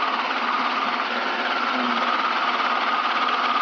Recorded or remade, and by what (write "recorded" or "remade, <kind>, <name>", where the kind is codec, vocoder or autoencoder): recorded